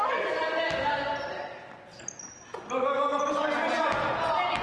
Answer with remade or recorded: recorded